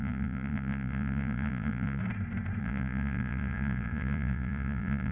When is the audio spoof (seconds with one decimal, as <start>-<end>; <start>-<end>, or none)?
0.0-2.0; 2.6-5.1